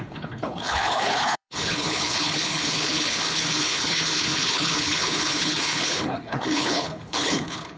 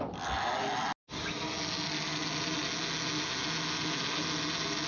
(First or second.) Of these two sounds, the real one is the second